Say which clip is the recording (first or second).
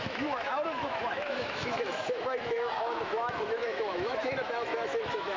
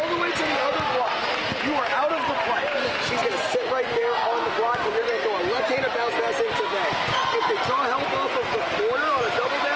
second